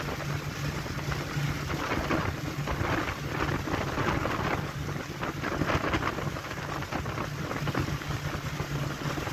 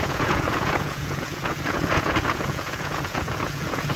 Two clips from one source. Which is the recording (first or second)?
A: first